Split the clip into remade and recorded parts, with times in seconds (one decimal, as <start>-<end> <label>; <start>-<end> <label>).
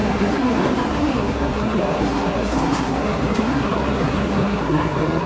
0.0-5.3 remade